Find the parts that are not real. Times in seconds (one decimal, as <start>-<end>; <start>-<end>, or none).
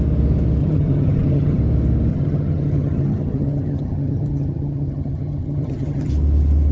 0.6-1.6; 2.1-6.1